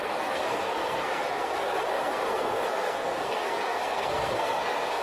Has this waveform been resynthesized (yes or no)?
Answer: yes